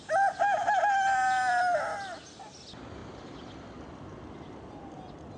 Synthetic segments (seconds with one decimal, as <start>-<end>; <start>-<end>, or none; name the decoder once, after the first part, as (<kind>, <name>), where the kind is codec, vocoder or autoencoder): none